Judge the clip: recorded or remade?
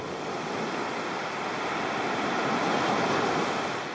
remade